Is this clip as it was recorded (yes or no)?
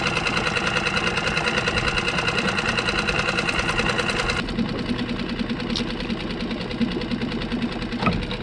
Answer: yes